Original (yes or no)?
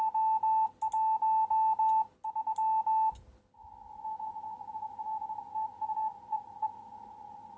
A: yes